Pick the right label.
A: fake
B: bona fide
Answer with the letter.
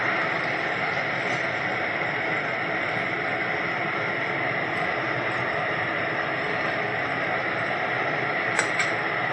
A